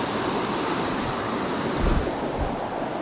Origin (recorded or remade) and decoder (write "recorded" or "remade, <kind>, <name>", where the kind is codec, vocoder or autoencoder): recorded